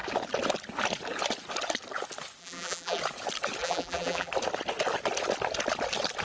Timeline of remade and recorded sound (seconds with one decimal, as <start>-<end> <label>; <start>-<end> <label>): 0.0-2.4 recorded; 2.4-3.0 remade; 3.0-3.6 recorded; 3.6-4.3 remade; 4.3-6.2 recorded